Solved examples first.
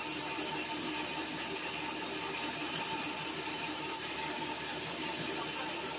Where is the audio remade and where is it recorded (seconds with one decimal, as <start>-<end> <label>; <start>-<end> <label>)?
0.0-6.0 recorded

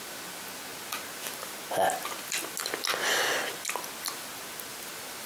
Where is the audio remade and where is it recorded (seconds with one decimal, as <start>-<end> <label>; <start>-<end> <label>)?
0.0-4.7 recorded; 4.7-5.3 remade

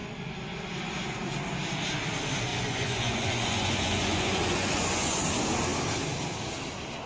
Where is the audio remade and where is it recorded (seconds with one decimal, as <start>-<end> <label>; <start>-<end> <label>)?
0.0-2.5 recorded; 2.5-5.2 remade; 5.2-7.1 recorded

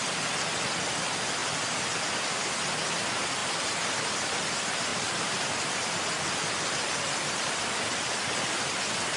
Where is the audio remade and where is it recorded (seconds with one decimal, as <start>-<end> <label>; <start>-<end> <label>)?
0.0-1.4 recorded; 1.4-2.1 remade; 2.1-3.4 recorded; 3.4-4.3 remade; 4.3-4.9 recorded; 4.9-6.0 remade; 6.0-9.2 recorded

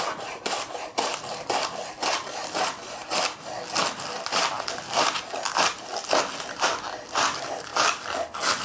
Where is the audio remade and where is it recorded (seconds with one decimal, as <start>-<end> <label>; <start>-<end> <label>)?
0.0-8.6 recorded

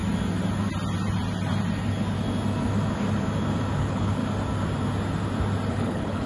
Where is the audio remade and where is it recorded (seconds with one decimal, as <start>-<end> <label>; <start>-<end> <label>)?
0.0-3.8 recorded; 3.8-4.2 remade; 4.2-5.7 recorded; 5.7-6.3 remade

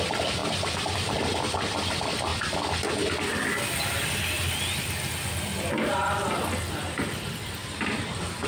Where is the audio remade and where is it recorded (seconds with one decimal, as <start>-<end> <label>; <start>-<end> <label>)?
0.0-0.4 recorded; 0.4-1.1 remade; 1.1-8.5 recorded

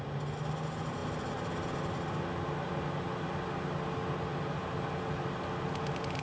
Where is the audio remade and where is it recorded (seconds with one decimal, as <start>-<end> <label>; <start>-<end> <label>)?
0.0-6.2 recorded